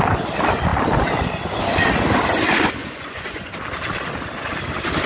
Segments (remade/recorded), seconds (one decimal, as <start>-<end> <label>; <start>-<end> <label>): 0.0-2.8 recorded; 2.8-3.5 remade; 3.5-5.1 recorded